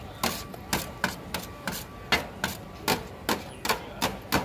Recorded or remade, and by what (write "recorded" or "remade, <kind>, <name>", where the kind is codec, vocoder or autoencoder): recorded